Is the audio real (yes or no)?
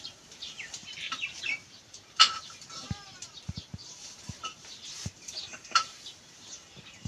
no